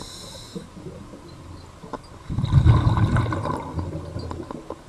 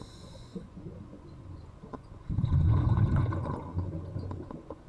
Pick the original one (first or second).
first